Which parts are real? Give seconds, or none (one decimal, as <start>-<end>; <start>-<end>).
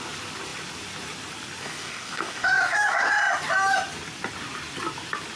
0.0-1.6; 3.1-5.4